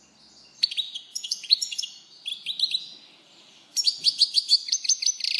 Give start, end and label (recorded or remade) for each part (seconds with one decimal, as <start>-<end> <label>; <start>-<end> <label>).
0.0-1.1 recorded; 1.1-1.8 remade; 1.8-5.4 recorded